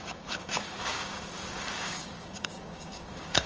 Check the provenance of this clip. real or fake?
fake